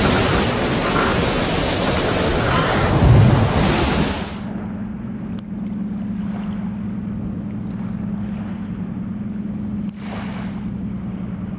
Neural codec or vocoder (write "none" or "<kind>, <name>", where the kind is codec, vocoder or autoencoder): none